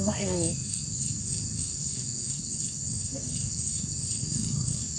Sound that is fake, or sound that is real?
fake